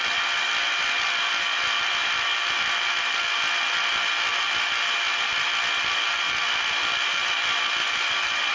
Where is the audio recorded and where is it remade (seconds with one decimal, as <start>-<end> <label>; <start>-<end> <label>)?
0.0-8.5 recorded

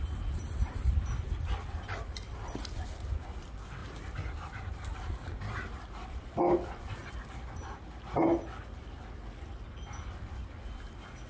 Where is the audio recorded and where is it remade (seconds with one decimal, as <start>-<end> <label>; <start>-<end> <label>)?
0.0-3.8 recorded; 3.8-5.0 remade; 5.0-11.3 recorded

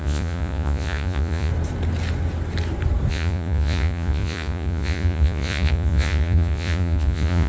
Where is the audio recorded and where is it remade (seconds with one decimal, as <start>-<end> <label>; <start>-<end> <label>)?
0.0-1.5 remade; 1.5-3.1 recorded; 3.1-7.5 remade

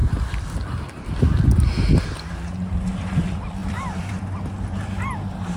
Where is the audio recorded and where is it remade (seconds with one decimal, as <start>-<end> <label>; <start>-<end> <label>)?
0.0-3.6 recorded; 3.6-4.2 remade; 4.2-5.6 recorded

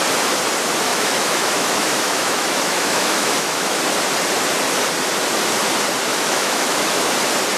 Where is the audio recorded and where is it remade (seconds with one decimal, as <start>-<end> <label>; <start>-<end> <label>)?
0.0-0.9 recorded; 0.9-3.8 remade; 3.8-6.1 recorded; 6.1-7.1 remade; 7.1-7.6 recorded

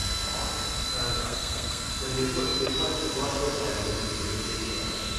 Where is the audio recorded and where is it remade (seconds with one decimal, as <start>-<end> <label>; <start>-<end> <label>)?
0.0-1.2 recorded; 1.2-1.9 remade; 1.9-5.2 recorded

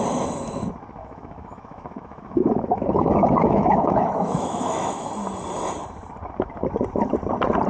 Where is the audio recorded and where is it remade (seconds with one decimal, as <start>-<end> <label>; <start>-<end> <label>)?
0.0-1.0 recorded; 1.0-5.1 remade; 5.1-7.7 recorded

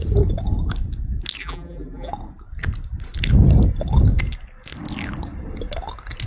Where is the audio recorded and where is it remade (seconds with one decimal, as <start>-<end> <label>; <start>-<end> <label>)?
0.0-1.4 recorded; 1.4-2.1 remade; 2.1-6.3 recorded